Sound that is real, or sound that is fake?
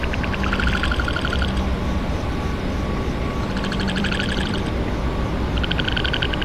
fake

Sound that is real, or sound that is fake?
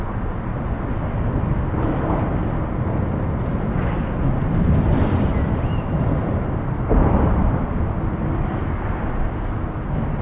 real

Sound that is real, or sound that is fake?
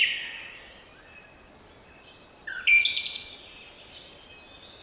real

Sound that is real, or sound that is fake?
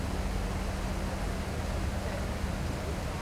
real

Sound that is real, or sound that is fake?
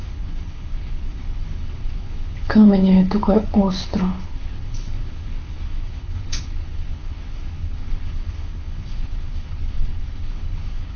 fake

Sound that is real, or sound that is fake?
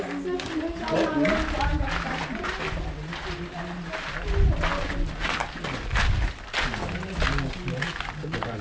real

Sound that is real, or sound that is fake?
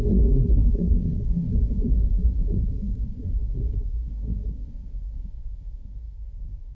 fake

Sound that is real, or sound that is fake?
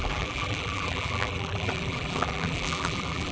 fake